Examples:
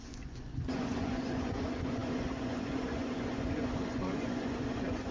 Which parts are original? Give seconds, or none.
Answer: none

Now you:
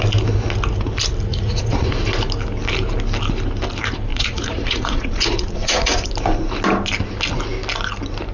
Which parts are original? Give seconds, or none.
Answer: 0.0-1.3; 1.9-4.1; 6.1-8.3